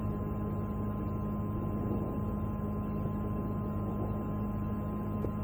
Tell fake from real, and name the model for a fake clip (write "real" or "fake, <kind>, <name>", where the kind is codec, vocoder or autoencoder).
real